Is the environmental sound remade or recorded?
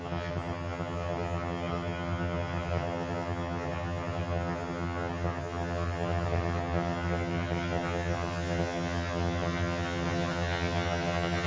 remade